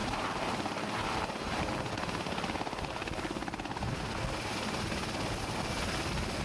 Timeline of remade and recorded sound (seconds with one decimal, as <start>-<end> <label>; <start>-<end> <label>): 0.0-1.6 remade; 1.6-6.4 recorded